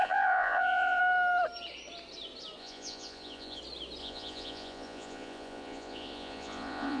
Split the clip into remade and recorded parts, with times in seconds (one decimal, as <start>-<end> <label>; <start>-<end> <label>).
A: 0.0-1.0 remade; 1.0-2.6 recorded; 2.6-3.6 remade; 3.6-4.0 recorded; 4.0-7.0 remade